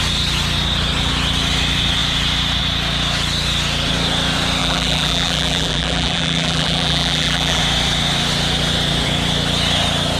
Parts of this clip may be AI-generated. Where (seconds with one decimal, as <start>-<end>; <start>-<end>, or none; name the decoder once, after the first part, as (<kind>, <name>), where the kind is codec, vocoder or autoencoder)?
4.6-7.6 (vocoder, BigVGAN v2)